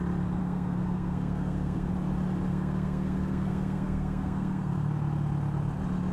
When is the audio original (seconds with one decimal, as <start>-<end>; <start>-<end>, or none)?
0.0-0.4; 1.9-2.5; 4.9-6.1